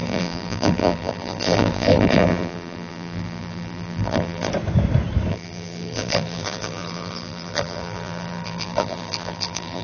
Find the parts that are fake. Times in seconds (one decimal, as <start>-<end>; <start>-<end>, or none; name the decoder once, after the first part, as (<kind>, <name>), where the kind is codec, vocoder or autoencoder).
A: 0.0-4.5 (vocoder, BigVGAN v2); 5.3-9.8